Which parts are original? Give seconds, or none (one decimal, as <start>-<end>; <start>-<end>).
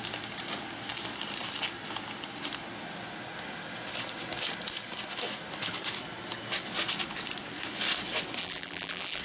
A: 0.0-8.4